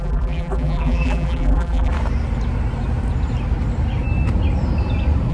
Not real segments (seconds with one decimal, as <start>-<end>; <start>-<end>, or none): 0.0-1.9

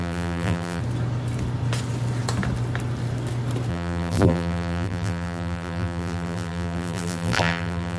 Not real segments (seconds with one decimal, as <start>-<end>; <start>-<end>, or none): 0.0-0.8; 3.7-8.0

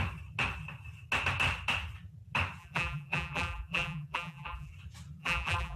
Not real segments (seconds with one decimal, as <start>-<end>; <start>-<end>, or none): 2.6-4.7; 5.2-5.8